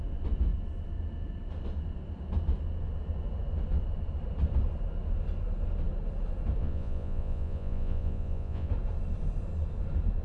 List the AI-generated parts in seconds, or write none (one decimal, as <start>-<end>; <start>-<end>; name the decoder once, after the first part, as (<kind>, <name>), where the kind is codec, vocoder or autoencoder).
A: 6.6-8.7 (vocoder, Vocos)